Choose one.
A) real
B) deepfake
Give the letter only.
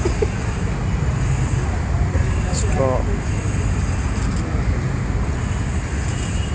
A